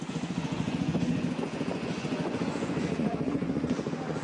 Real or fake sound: fake